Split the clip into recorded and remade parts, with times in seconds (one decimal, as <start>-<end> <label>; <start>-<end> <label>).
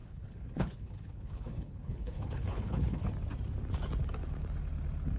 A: 0.0-3.1 remade; 3.1-5.2 recorded